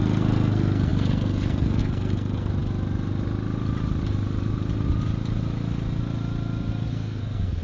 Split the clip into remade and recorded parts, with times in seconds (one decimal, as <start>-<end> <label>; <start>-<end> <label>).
0.0-2.5 remade; 2.5-6.9 recorded; 6.9-7.6 remade